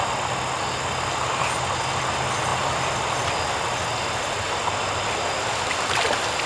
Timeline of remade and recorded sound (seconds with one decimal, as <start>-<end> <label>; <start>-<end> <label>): 0.0-6.5 recorded